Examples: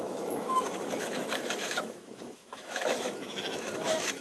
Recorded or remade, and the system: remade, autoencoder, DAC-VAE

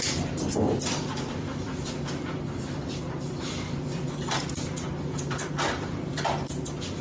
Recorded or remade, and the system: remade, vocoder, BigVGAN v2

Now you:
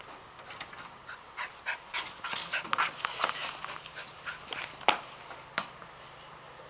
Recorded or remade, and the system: recorded